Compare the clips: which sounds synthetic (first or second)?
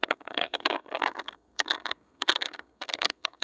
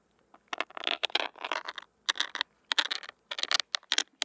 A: first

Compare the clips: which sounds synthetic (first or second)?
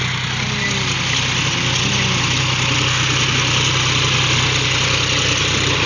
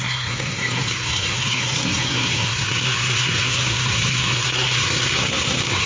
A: second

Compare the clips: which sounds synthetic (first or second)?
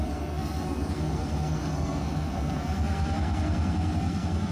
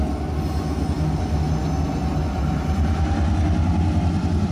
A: first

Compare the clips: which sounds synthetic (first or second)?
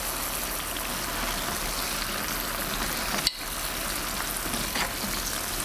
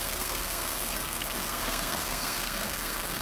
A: second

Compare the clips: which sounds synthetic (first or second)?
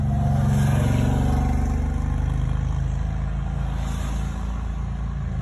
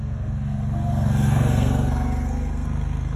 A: second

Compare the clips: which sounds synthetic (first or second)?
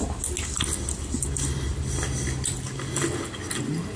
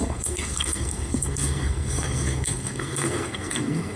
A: second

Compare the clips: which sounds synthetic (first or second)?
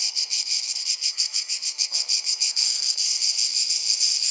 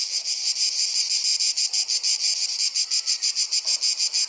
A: first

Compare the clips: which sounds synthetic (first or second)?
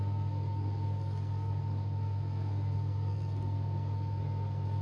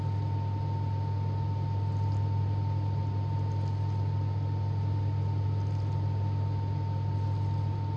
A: first